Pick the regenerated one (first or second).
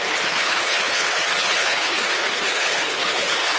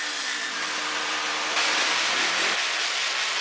first